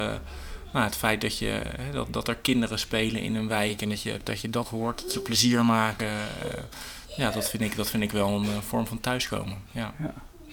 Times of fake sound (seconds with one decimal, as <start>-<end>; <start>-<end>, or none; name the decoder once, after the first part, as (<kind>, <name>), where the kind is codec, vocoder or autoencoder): 3.7-6.0 (autoencoder, DAC-VAE)